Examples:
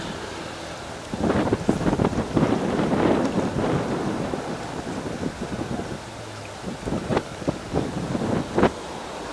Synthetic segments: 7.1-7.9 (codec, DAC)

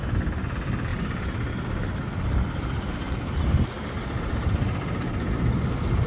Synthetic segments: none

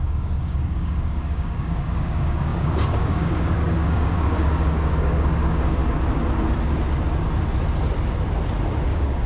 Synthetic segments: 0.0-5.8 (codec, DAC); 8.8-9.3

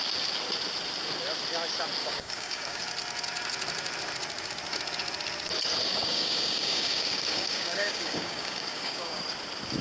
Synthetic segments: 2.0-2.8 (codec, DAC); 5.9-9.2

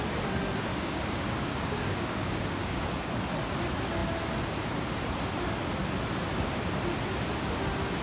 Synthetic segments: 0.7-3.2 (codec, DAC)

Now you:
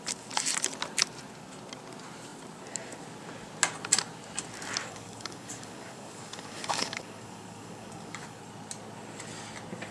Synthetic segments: 4.8-8.4 (codec, DAC)

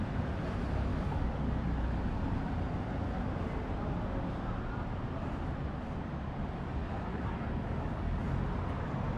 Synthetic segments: 0.9-1.5 (codec, DAC); 7.1-8.2

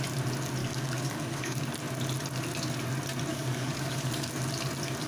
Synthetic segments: 0.6-1.6 (codec, DAC); 3.3-4.3